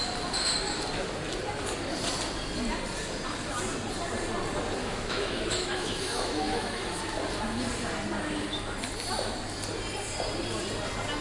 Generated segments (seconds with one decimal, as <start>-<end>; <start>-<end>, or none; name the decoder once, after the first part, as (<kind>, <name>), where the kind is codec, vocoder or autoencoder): 4.8-7.0 (autoencoder, DAC-VAE)